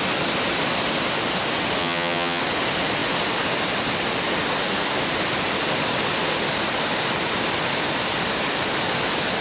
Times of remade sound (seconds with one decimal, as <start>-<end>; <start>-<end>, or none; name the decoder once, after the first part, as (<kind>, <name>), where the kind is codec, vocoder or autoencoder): 1.8-2.4 (vocoder, HiFi-GAN)